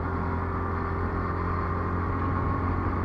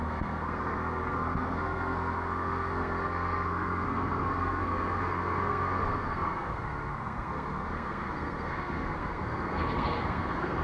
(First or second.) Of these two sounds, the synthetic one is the second